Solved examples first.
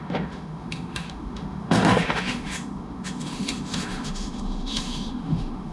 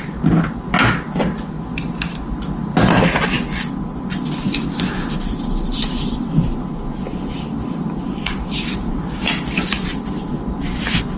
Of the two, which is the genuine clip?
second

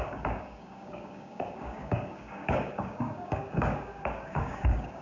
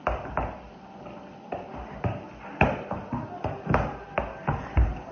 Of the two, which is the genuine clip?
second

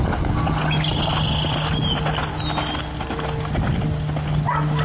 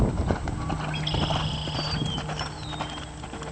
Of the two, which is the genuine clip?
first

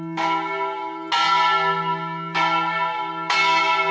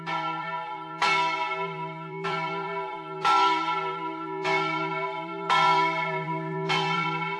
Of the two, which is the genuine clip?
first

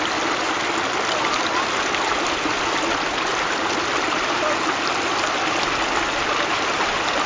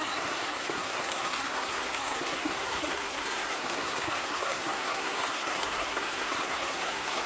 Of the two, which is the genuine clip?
first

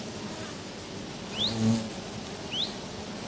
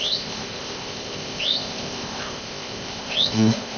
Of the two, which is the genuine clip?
first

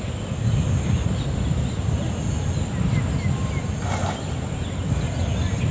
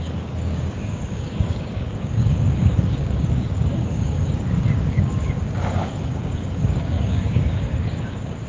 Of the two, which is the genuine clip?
first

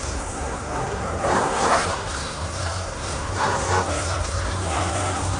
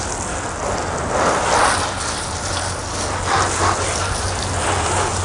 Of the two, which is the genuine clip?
second